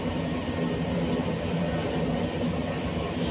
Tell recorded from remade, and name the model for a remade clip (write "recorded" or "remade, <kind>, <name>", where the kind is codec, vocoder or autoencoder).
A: recorded